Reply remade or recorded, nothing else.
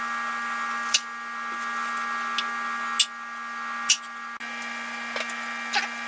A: recorded